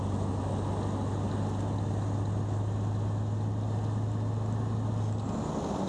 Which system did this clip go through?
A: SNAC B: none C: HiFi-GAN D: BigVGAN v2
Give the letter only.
B